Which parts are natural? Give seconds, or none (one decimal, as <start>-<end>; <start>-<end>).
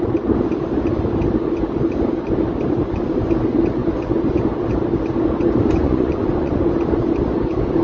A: 0.0-5.8; 6.7-7.8